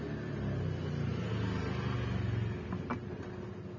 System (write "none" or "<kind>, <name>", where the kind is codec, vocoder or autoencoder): none